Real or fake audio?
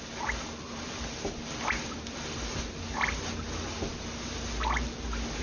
real